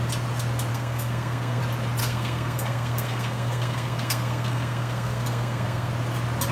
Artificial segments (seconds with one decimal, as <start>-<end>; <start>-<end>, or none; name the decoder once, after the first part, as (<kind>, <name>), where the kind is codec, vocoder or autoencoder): 0.7-1.6 (codec, SNAC); 2.0-5.9